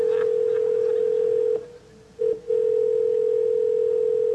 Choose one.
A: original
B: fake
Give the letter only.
A